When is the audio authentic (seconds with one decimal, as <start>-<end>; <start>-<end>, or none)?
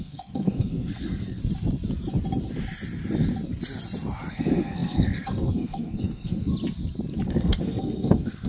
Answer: 1.4-4.3; 6.5-7.3